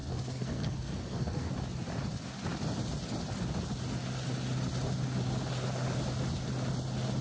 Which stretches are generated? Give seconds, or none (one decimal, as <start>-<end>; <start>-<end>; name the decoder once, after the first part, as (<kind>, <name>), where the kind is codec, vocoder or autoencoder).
0.0-1.5 (codec, SNAC)